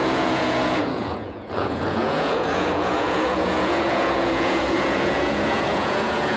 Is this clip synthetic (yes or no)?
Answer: yes